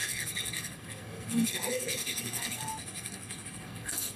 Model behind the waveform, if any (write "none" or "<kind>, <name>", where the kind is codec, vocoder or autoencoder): codec, SNAC